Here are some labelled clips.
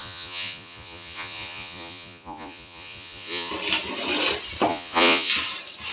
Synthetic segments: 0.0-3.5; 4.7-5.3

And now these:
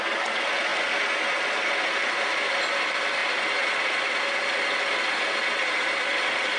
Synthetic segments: 0.0-0.7; 1.2-6.6